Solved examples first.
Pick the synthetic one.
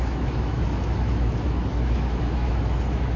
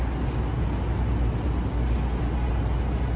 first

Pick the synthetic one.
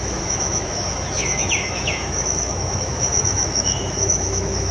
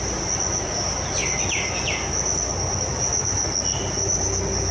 first